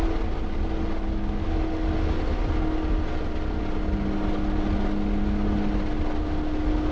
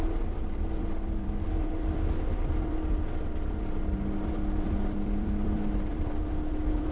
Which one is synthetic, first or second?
second